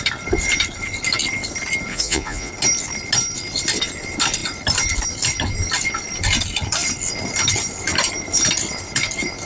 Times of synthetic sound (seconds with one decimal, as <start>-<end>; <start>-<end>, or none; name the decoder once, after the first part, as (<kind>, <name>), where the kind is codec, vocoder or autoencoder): 1.9-2.5 (vocoder, Vocos)